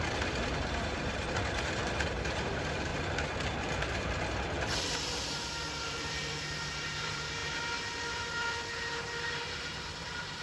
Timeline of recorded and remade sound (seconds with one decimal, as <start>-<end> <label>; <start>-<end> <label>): 0.0-2.9 remade; 2.9-4.8 recorded; 4.8-10.4 remade